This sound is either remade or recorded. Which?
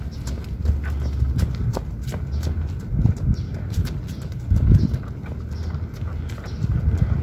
recorded